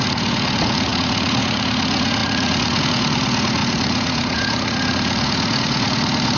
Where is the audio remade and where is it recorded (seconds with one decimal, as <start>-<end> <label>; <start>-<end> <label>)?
0.0-6.4 remade